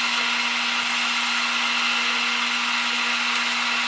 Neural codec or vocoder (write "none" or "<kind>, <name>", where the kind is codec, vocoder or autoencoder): none